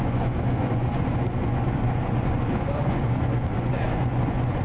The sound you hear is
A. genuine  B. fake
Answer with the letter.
B